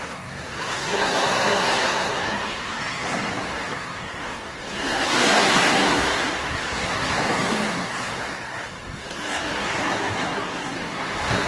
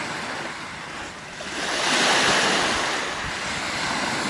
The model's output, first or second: first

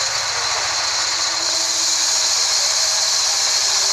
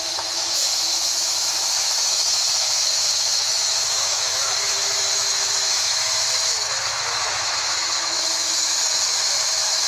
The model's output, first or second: second